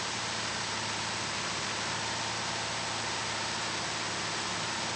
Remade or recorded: recorded